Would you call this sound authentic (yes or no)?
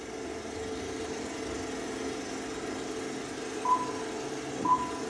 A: yes